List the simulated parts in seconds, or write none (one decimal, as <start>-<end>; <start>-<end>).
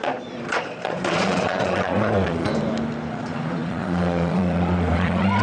0.0-2.5; 3.1-5.4